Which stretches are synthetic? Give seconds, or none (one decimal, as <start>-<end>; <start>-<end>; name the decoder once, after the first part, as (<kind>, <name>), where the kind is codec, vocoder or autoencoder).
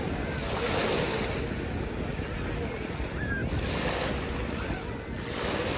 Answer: none